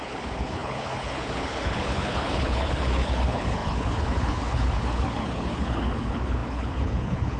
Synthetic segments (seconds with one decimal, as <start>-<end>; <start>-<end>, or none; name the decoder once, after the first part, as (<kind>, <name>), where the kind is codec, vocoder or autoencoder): 0.0-7.4 (codec, HILCodec)

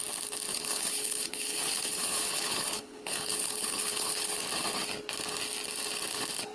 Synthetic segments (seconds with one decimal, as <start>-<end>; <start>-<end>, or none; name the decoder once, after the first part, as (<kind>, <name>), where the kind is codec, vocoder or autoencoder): 0.5-4.4 (codec, HILCodec)

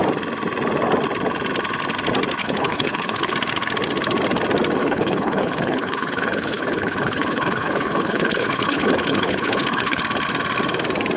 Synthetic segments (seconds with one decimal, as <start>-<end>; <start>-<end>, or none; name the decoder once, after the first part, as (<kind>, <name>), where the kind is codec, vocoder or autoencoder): 2.4-3.3 (codec, HILCodec); 4.8-10.0

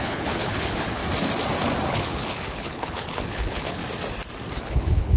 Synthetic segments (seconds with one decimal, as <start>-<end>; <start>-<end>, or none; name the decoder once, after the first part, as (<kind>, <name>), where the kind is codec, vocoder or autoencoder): 0.0-1.0 (codec, HILCodec); 1.9-3.8; 4.6-5.2

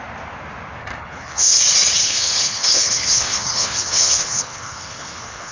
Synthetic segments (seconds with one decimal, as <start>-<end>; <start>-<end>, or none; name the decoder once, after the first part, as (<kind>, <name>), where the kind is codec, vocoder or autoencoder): 0.8-1.6 (codec, HILCodec); 2.0-5.5